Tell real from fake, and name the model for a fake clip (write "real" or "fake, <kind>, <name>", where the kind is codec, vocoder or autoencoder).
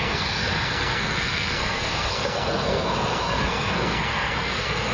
fake, codec, SNAC